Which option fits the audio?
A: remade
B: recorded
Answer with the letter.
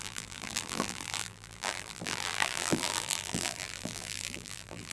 A